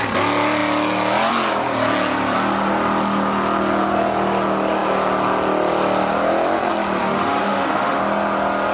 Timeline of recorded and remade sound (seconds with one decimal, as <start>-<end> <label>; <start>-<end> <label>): 0.0-7.0 recorded; 7.0-8.0 remade; 8.0-8.7 recorded